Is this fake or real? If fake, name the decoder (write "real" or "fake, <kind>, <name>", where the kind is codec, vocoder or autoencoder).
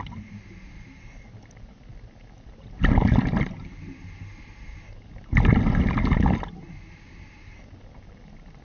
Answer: real